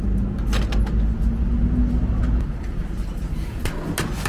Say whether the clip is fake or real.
real